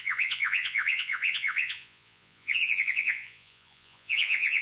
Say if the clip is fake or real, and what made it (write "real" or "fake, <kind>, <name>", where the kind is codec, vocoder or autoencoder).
fake, vocoder, Vocos